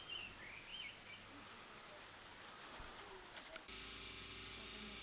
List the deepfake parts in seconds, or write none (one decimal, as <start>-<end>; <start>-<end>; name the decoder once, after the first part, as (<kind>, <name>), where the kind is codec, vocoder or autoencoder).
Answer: none